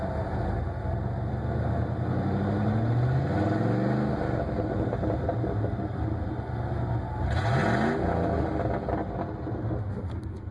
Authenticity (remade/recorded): recorded